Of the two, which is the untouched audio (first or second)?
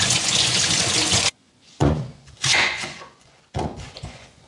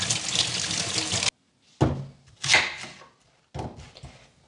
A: second